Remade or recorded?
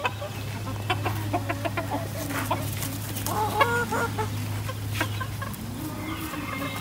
recorded